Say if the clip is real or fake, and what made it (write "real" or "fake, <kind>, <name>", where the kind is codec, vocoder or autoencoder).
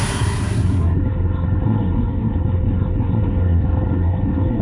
fake, codec, SNAC